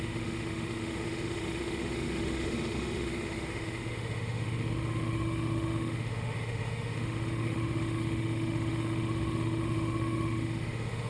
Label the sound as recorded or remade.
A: remade